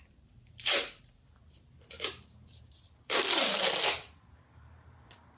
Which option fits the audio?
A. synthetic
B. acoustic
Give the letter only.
A